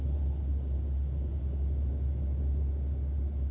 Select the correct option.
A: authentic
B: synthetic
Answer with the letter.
A